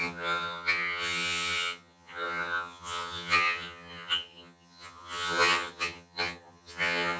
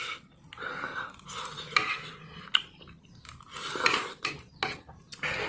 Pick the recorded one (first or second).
second